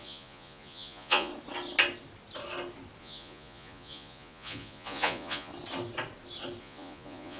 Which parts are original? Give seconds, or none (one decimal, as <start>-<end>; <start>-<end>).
1.3-3.0; 5.5-6.6